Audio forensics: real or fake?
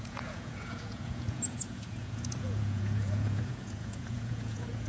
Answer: fake